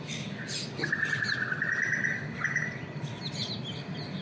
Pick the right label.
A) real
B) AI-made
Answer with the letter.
A